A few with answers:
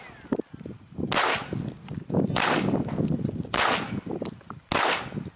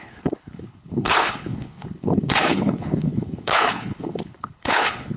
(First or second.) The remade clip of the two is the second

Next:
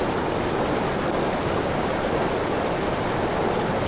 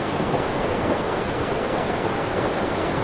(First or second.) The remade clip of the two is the second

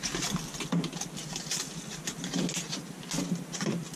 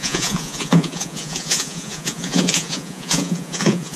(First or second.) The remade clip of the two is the second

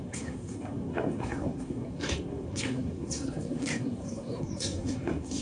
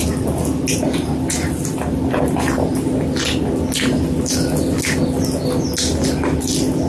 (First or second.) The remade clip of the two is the first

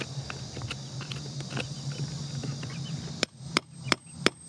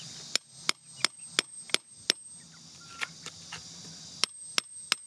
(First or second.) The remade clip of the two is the first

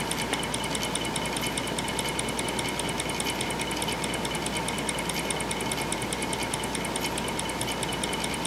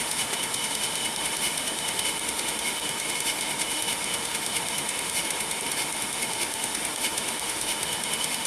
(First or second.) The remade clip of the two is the second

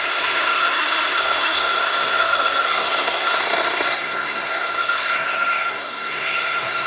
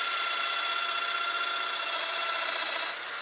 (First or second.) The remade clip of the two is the first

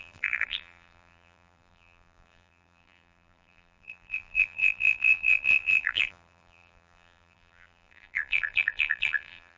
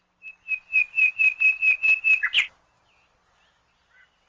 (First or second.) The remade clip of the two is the first